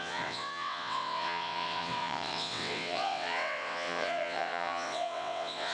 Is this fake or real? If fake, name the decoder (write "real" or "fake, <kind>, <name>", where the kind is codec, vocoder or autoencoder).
fake, vocoder, WaveNeXt